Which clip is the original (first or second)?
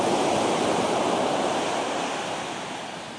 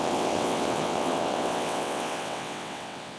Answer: first